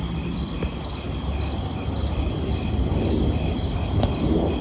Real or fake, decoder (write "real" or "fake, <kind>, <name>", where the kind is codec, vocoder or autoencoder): real